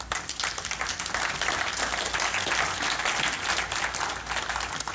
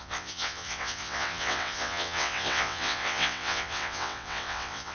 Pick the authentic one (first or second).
first